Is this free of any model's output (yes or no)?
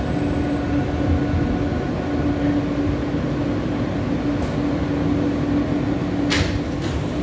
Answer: yes